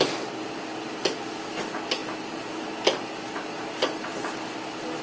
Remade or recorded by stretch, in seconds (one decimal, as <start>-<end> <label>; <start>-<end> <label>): 0.0-5.0 recorded